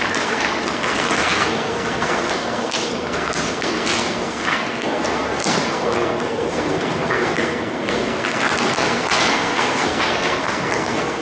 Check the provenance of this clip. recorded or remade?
remade